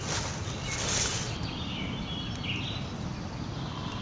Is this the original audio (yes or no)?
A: yes